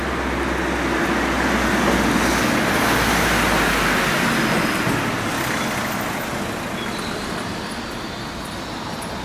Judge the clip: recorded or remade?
recorded